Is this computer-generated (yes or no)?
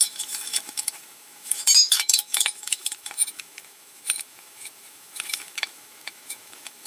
yes